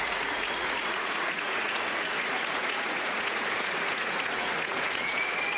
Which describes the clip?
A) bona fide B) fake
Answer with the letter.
B